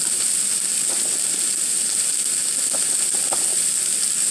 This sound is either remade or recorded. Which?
recorded